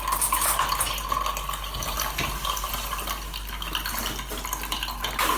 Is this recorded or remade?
recorded